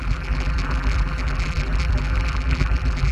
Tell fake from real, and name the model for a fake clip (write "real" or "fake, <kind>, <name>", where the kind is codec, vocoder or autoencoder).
fake, vocoder, BigVGAN v2